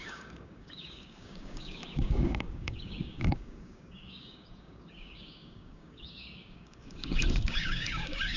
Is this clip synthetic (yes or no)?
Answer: yes